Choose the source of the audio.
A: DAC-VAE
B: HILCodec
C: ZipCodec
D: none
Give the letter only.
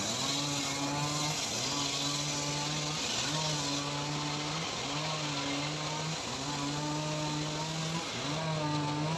D